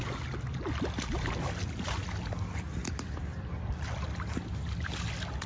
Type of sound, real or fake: real